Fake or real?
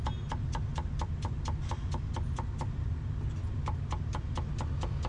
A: real